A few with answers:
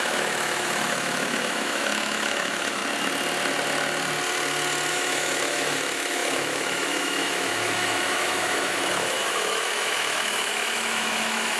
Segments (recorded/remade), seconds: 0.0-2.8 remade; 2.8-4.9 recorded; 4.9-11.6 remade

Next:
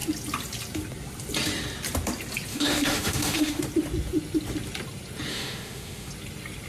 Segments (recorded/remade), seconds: 0.0-2.5 recorded; 2.5-3.6 remade; 3.6-5.3 recorded; 5.3-6.1 remade; 6.1-6.7 recorded

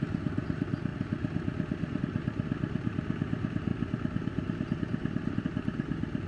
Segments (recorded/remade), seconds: 0.0-6.3 recorded

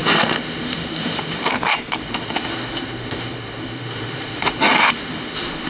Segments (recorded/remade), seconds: 0.0-1.5 remade; 1.5-2.0 recorded; 2.0-5.7 remade

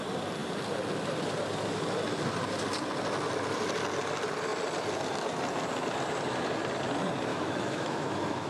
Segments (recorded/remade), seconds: 0.0-7.3 recorded; 7.3-8.5 remade

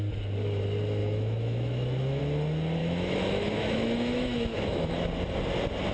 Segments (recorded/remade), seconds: 0.0-1.0 recorded; 1.0-2.2 remade; 2.2-2.8 recorded; 2.8-4.9 remade; 4.9-5.9 recorded